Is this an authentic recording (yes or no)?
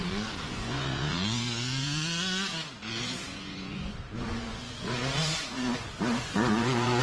no